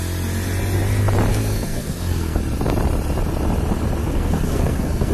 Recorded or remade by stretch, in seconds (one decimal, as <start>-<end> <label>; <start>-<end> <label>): 0.0-1.3 recorded; 1.3-2.4 remade; 2.4-4.0 recorded; 4.0-5.1 remade